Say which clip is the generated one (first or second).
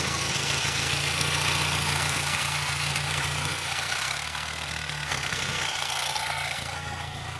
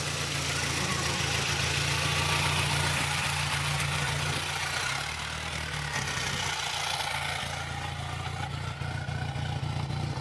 first